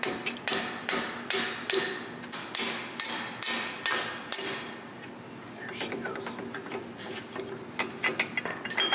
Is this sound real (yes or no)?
yes